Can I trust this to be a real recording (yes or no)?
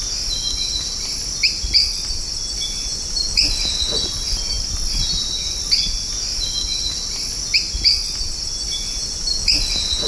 yes